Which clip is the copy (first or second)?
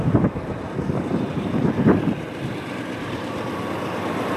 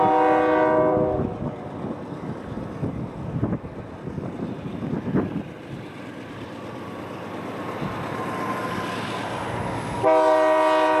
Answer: first